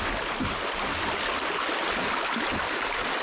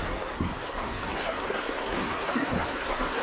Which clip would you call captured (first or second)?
first